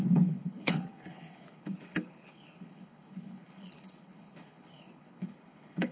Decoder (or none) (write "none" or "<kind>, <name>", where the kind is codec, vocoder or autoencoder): codec, HILCodec